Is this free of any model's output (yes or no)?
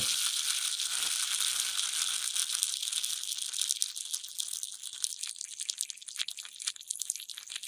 yes